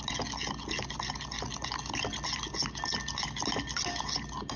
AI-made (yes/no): no